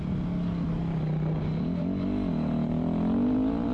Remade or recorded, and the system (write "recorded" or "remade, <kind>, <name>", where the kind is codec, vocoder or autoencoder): recorded